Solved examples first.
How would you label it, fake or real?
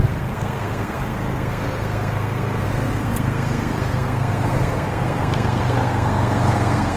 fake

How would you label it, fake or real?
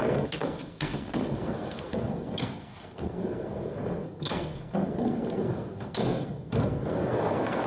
fake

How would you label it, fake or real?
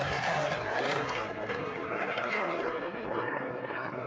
fake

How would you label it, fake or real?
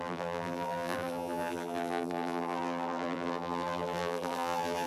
fake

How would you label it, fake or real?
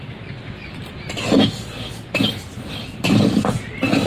real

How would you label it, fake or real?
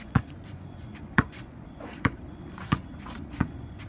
fake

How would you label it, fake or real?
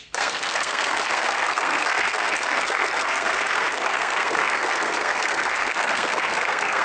fake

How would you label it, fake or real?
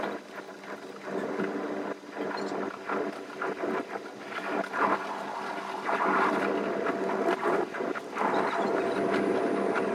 real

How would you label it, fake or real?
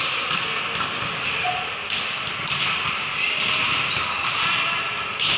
real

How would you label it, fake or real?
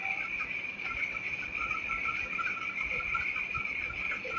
fake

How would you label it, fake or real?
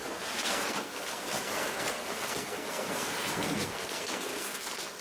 fake